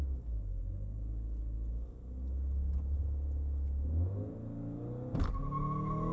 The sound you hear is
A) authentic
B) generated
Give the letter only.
A